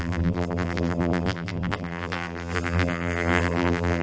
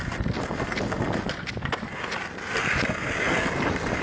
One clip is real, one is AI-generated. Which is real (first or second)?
second